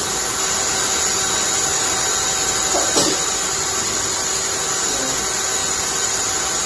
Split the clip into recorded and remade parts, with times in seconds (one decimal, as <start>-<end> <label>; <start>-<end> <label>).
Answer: 0.0-6.7 recorded